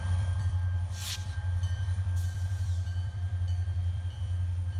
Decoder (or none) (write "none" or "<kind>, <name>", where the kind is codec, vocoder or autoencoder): vocoder, BigVGAN v2